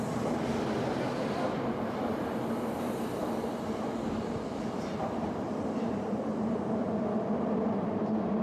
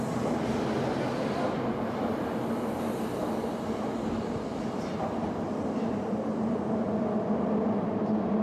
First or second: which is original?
second